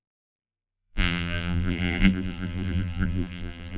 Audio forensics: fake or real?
fake